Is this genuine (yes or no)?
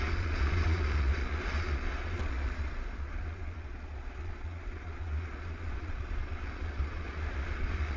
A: no